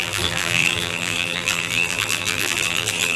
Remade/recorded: remade